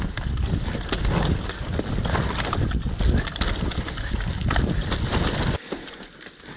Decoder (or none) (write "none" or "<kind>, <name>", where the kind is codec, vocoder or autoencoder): none